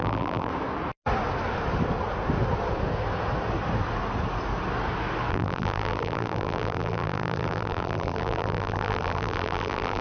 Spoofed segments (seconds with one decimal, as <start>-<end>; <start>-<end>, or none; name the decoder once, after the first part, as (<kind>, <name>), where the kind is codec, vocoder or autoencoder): 0.0-0.5 (vocoder, BigVGAN v2); 5.3-10.0